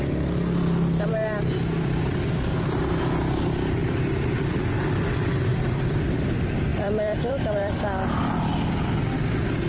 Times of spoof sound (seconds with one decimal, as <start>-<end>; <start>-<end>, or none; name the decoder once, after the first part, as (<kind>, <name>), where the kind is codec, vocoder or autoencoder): 3.8-6.1 (vocoder, BigVGAN v2); 6.7-8.7